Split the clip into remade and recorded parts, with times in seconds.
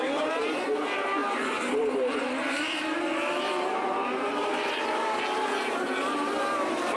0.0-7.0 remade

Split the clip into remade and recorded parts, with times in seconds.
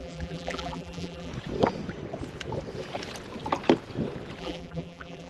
0.0-1.3 remade; 1.3-4.4 recorded; 4.4-5.3 remade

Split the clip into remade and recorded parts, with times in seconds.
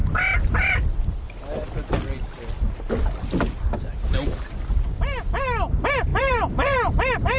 0.0-6.1 recorded; 6.1-6.9 remade; 6.9-7.4 recorded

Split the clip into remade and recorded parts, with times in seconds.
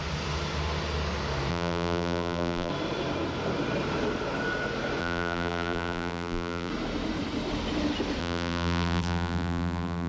0.0-1.5 recorded; 1.5-2.7 remade; 2.7-5.0 recorded; 5.0-6.7 remade; 6.7-8.2 recorded; 8.2-10.1 remade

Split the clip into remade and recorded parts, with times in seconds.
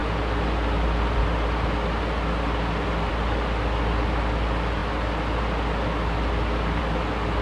0.0-7.4 recorded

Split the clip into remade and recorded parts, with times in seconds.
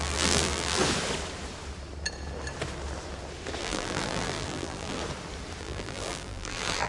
0.0-0.8 remade; 0.8-3.6 recorded; 3.6-5.0 remade; 5.0-5.6 recorded; 5.6-6.9 remade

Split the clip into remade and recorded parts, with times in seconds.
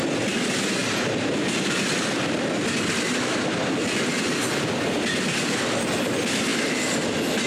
0.0-7.5 recorded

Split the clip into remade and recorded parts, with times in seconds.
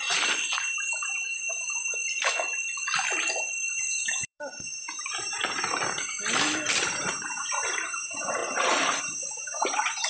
0.0-2.3 remade; 2.3-3.7 recorded; 3.7-10.1 remade